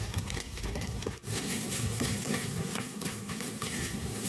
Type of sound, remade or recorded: remade